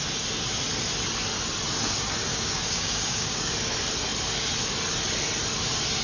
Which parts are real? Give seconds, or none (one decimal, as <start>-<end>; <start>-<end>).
0.0-2.3; 3.5-6.0